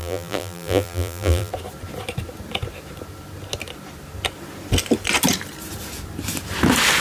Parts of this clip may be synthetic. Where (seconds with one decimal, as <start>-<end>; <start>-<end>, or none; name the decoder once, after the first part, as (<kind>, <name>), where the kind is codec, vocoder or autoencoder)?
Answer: 0.0-1.5 (vocoder, BigVGAN v2)